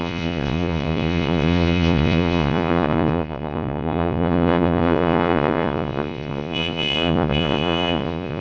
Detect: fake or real fake